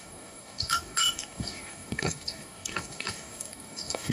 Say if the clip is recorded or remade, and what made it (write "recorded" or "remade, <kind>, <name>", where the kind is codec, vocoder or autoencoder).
remade, codec, DAC